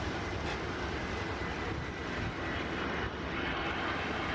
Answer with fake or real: real